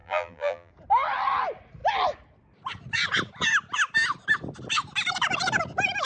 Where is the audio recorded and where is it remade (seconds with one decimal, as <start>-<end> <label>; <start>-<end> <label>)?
0.0-0.7 remade; 0.7-6.0 recorded